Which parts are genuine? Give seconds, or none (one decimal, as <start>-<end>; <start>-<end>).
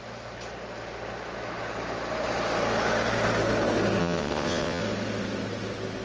0.0-4.0; 4.8-6.0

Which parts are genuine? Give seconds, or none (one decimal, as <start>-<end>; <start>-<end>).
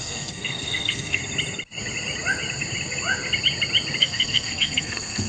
1.2-4.0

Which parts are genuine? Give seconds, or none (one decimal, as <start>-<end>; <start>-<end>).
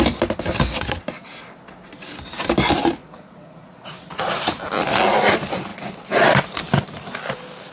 0.0-3.0; 4.3-7.7